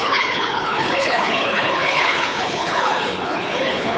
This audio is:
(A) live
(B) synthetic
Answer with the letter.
B